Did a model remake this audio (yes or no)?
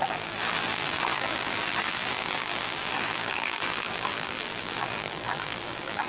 yes